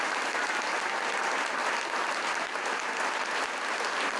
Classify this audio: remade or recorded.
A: recorded